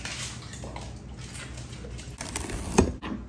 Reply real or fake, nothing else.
real